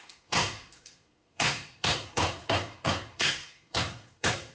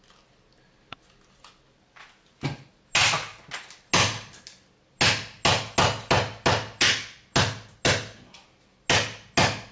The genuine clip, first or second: second